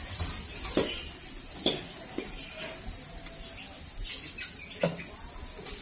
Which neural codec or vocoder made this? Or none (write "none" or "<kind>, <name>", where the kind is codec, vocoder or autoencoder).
none